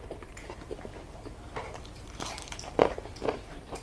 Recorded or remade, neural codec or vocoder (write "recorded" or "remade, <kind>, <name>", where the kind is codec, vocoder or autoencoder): remade, vocoder, BigVGAN v2